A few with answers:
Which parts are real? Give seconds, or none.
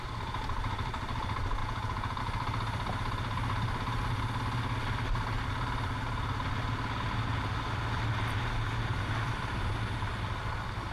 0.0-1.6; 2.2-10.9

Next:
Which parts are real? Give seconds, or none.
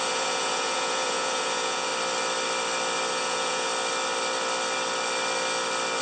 1.9-3.1; 3.7-6.0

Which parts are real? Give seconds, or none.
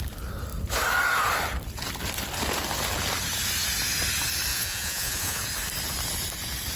0.0-4.5; 5.4-6.8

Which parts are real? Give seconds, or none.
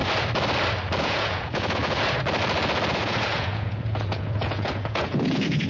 0.0-1.0; 1.8-2.9